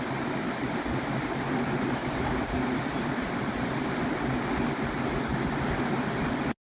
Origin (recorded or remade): recorded